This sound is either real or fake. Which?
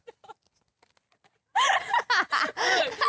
real